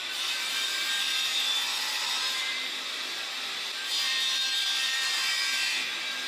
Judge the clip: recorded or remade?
remade